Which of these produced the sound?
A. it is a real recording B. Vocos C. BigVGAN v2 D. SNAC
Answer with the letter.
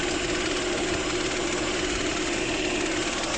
A